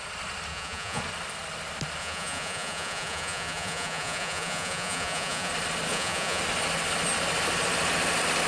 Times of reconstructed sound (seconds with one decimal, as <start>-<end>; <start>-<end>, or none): 0.5-1.0; 2.0-5.5; 5.9-6.4